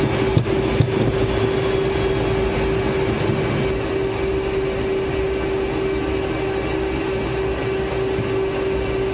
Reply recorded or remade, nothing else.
recorded